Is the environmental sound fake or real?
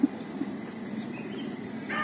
real